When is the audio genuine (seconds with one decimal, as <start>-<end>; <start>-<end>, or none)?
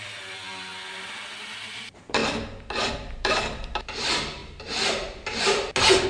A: 0.7-1.8; 2.2-2.8; 4.4-6.1